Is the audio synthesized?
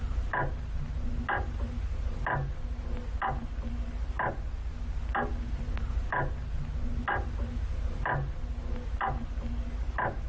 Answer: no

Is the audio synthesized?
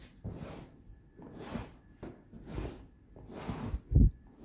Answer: no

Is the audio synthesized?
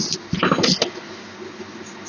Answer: no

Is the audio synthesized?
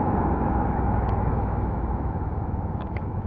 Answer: yes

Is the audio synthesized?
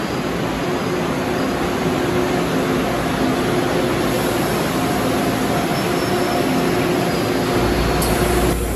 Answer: no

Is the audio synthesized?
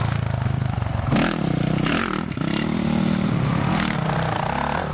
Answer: no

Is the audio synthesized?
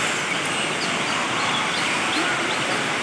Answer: no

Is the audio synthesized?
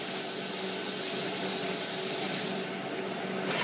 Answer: no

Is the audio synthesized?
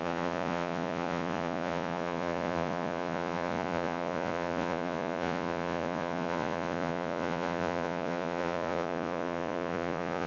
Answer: yes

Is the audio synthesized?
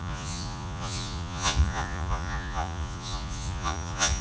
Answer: yes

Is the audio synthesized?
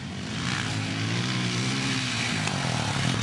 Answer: no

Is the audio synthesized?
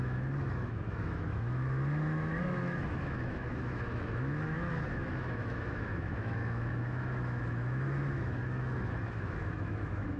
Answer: yes